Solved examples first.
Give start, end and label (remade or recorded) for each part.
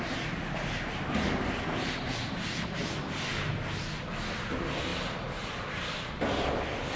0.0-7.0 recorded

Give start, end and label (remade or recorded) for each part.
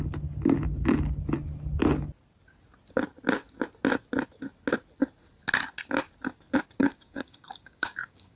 0.0-6.8 recorded; 6.8-8.4 remade